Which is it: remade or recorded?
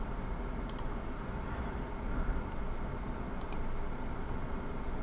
recorded